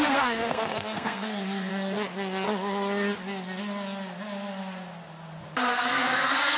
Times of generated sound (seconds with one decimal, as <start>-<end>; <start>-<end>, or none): 0.0-1.7; 5.7-6.6